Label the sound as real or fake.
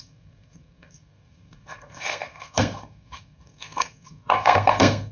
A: fake